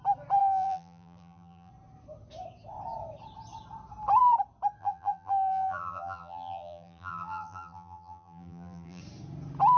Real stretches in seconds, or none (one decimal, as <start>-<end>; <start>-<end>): 0.0-0.4; 1.7-4.8; 9.0-9.8